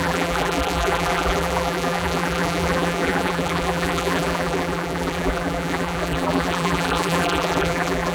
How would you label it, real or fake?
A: fake